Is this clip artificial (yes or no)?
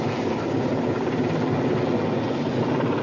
no